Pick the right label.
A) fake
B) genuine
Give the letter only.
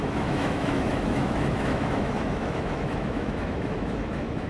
A